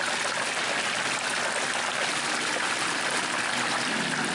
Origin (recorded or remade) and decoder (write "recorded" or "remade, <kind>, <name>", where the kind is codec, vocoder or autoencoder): recorded